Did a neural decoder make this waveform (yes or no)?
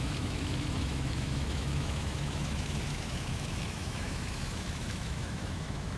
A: yes